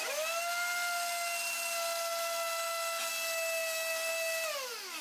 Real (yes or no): yes